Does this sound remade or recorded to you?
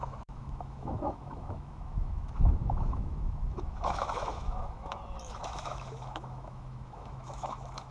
remade